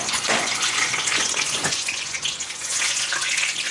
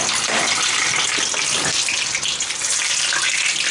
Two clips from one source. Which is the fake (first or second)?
first